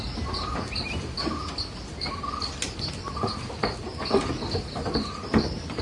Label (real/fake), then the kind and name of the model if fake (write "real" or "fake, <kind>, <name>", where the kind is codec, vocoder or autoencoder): real